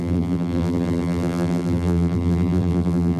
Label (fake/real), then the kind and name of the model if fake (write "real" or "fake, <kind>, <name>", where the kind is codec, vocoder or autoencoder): fake, vocoder, BigVGAN v2